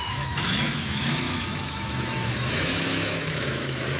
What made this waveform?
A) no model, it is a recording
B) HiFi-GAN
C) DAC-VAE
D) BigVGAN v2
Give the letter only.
C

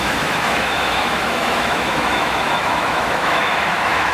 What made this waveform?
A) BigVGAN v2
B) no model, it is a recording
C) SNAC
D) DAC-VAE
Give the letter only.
D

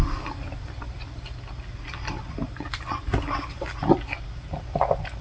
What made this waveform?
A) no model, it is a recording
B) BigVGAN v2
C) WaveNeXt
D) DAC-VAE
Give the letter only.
A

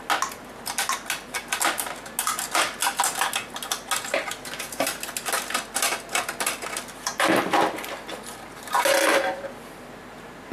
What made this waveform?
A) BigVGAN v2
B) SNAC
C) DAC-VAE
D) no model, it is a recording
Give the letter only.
D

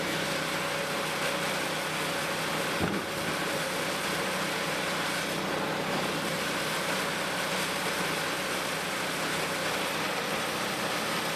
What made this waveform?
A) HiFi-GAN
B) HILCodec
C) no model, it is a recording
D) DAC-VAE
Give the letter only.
C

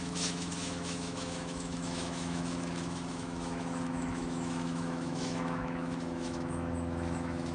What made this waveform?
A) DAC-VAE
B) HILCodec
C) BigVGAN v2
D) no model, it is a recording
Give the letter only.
A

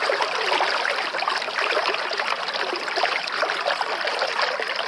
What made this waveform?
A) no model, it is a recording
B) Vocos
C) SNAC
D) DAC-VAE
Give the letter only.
A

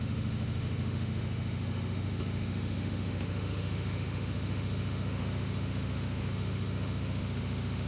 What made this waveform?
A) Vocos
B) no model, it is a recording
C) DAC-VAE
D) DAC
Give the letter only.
C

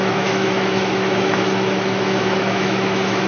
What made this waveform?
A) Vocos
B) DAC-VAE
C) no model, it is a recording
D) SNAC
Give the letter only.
B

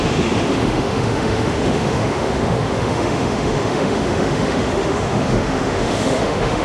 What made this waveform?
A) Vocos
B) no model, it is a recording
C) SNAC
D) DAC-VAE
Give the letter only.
D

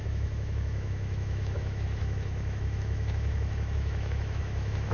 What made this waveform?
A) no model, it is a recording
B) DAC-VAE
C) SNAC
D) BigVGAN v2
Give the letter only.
B